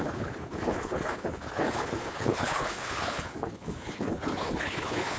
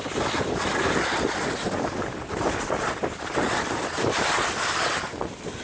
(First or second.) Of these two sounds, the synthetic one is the first